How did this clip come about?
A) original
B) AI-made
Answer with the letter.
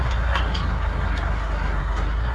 B